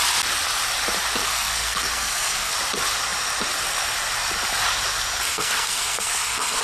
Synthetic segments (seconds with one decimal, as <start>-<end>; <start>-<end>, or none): 1.2-2.5; 5.3-6.6